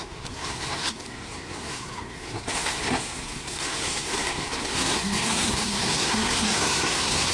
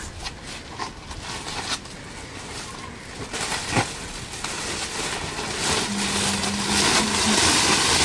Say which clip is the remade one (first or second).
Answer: first